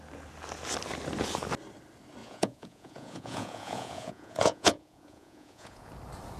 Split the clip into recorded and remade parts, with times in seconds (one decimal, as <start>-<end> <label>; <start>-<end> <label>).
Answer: 0.0-2.2 recorded; 2.2-5.9 remade; 5.9-6.4 recorded